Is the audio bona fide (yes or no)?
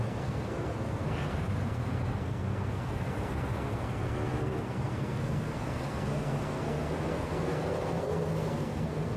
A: no